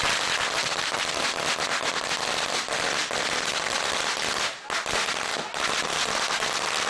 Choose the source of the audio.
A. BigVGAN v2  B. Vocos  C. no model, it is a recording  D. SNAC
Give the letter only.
C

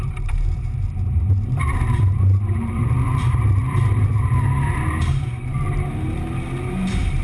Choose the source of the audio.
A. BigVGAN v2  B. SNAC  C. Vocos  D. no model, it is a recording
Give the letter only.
A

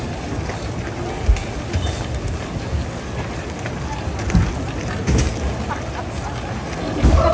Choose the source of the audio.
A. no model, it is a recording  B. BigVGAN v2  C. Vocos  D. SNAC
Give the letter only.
A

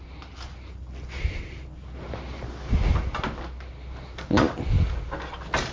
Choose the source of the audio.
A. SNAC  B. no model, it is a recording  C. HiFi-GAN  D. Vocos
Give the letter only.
B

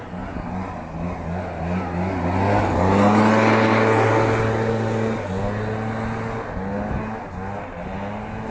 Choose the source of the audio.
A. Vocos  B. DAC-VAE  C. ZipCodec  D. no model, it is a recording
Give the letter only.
D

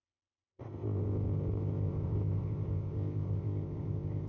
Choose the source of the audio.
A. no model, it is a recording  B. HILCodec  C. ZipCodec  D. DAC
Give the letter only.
C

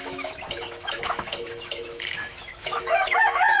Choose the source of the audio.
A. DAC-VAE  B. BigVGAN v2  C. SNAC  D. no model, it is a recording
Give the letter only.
A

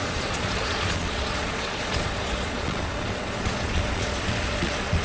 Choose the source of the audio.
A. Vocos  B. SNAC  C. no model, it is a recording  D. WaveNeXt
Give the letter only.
A